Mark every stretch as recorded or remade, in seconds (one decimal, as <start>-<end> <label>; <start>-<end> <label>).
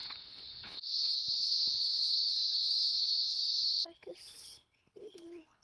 0.0-5.6 remade